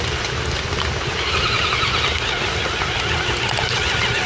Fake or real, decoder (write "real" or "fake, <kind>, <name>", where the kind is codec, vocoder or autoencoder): real